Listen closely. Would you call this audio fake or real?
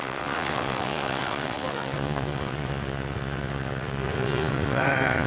fake